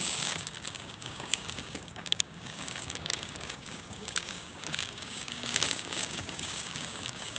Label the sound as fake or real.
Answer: fake